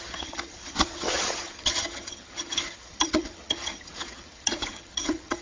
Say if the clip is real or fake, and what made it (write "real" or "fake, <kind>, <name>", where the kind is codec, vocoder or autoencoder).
fake, vocoder, HiFi-GAN